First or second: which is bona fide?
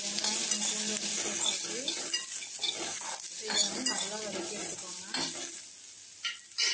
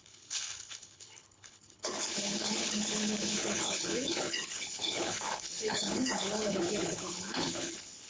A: first